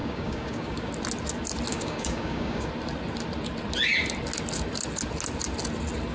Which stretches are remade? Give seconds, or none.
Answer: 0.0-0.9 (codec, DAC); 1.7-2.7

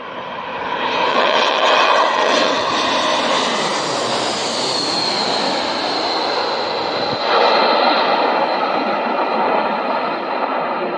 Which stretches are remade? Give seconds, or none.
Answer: 1.1-2.7 (vocoder, WaveNeXt)

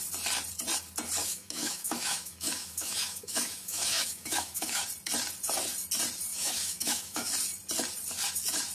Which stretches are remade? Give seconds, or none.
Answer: 1.2-4.8 (autoencoder, DAC-VAE); 6.3-7.3

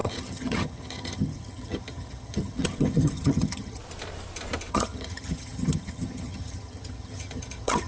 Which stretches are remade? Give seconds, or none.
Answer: 0.0-3.8 (vocoder, HiFi-GAN); 4.7-7.9

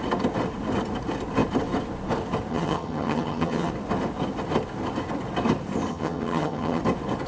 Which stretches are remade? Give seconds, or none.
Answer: 2.5-3.7 (vocoder, HiFi-GAN); 5.9-6.8